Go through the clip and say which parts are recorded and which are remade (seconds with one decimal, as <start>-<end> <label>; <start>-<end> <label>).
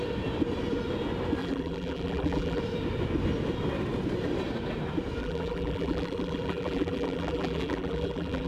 0.0-1.4 recorded; 1.4-2.6 remade; 2.6-5.2 recorded; 5.2-8.5 remade